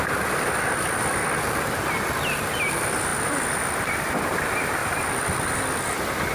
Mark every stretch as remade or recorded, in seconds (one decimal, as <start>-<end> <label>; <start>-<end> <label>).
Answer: 0.0-6.3 recorded

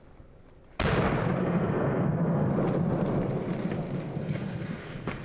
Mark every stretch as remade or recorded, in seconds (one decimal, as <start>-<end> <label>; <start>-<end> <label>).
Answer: 0.0-1.4 recorded; 1.4-2.5 remade; 2.5-4.2 recorded; 4.2-5.2 remade

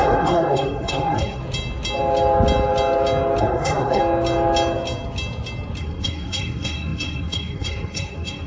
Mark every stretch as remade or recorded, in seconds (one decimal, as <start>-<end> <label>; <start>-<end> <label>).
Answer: 0.0-1.4 remade; 1.4-3.4 recorded; 3.4-4.0 remade; 4.0-5.8 recorded; 5.8-8.5 remade

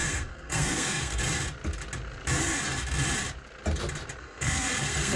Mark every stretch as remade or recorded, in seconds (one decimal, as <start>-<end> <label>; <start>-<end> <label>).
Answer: 0.0-1.2 remade; 1.2-4.2 recorded; 4.2-5.2 remade

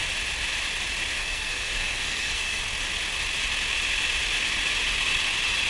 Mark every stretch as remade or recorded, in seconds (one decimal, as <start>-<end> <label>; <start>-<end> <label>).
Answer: 0.0-1.2 recorded; 1.2-2.6 remade; 2.6-5.7 recorded